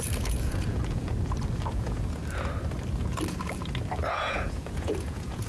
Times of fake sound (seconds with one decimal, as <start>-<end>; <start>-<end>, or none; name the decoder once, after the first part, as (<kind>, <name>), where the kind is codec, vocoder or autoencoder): 0.0-1.1 (vocoder, Vocos); 1.7-2.2; 4.1-5.5